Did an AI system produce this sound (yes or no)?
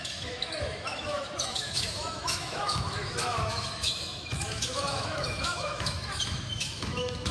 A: yes